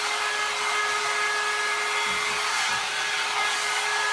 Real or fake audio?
real